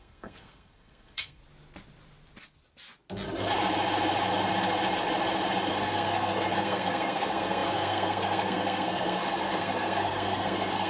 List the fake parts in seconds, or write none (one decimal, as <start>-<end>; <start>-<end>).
0.0-1.4; 5.7-10.9